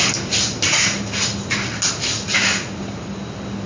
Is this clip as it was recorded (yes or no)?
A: yes